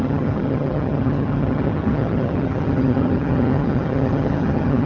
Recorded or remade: remade